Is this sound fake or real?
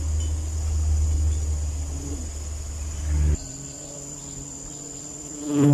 real